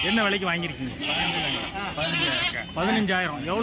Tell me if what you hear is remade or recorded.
recorded